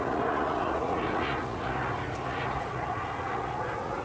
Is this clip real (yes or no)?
no